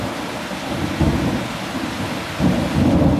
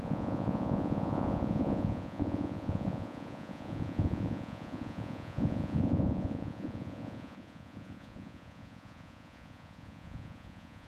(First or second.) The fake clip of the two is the second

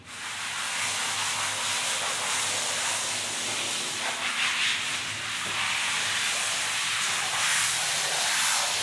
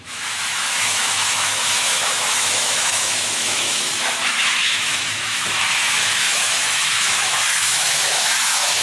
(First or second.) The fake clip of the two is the second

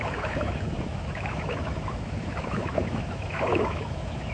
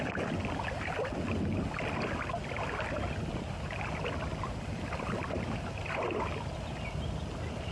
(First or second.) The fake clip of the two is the first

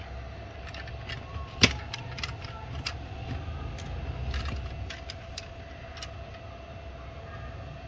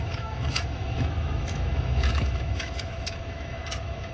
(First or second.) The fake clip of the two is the second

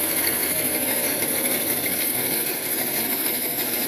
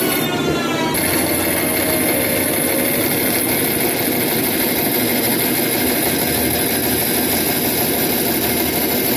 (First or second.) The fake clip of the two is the first